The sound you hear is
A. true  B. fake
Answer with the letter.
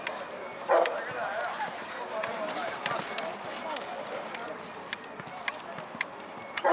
A